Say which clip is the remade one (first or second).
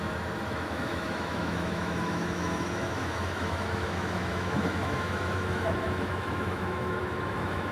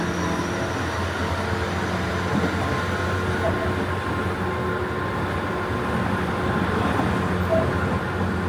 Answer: first